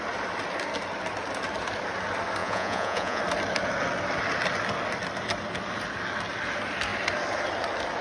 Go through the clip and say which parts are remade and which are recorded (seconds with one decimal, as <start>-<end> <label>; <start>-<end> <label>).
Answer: 0.0-2.4 recorded; 2.4-3.2 remade; 3.2-8.0 recorded